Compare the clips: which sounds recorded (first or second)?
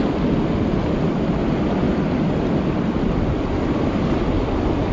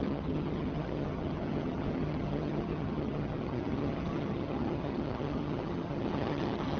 first